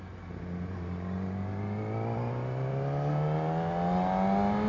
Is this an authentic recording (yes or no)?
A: yes